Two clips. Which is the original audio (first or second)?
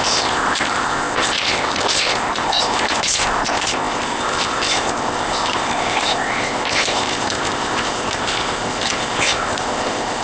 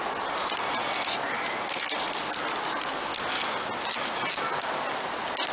second